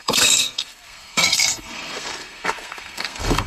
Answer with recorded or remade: remade